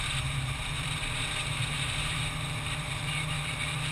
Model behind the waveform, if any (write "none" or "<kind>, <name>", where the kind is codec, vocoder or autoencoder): vocoder, BigVGAN v2